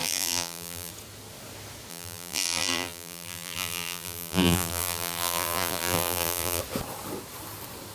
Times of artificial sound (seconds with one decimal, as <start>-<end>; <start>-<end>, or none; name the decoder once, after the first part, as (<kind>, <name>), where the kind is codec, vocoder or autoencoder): 0.0-0.9 (vocoder, BigVGAN v2); 1.9-6.6